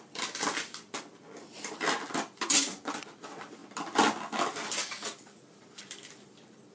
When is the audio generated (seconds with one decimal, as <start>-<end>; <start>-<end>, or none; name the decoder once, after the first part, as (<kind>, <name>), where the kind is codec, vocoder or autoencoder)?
none